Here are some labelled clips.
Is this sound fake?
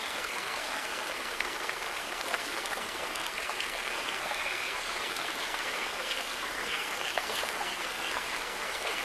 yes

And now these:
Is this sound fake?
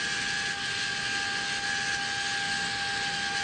no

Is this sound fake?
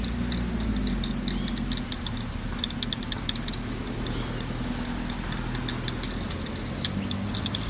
no